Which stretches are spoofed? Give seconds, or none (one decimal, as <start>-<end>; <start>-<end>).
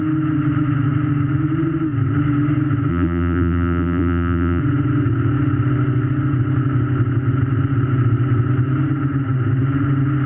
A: 2.9-4.6